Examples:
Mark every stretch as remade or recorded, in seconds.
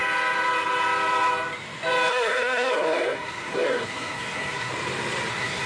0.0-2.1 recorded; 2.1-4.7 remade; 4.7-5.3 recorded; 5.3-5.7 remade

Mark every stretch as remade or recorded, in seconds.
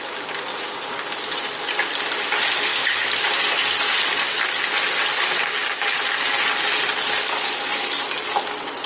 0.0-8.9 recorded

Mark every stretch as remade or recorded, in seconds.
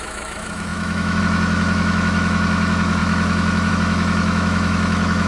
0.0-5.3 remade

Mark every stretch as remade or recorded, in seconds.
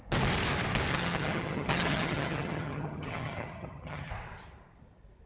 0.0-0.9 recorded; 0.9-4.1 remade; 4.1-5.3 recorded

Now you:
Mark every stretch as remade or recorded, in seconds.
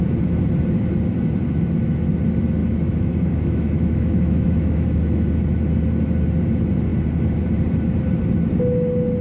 0.0-2.6 recorded; 2.6-5.0 remade; 5.0-9.2 recorded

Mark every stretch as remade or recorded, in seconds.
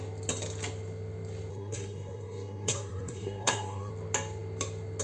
0.0-1.5 recorded; 1.5-3.9 remade; 3.9-5.0 recorded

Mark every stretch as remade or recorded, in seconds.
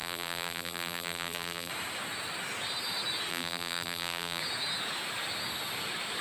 0.0-1.7 remade; 1.7-3.3 recorded; 3.3-4.4 remade; 4.4-6.2 recorded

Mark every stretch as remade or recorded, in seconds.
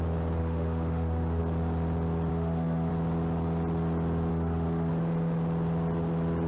0.0-0.4 recorded; 0.4-1.4 remade; 1.4-2.3 recorded; 2.3-2.9 remade; 2.9-4.3 recorded; 4.3-4.9 remade; 4.9-6.5 recorded